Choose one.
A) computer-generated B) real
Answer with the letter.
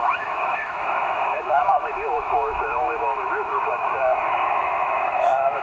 A